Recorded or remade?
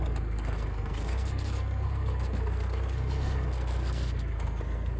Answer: remade